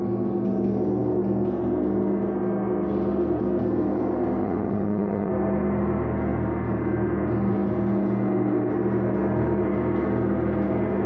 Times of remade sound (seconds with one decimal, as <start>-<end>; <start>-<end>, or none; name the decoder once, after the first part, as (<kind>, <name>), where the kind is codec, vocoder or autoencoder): 4.4-5.3 (vocoder, WaveNeXt)